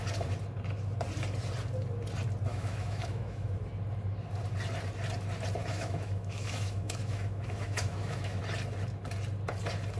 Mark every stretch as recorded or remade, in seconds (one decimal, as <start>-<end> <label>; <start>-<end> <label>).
0.0-2.5 recorded; 2.5-3.5 remade; 3.5-5.6 recorded; 5.6-8.4 remade; 8.4-10.0 recorded